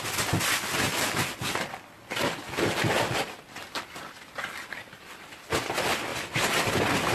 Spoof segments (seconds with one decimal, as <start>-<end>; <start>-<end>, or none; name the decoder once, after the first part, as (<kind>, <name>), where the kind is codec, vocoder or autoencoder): none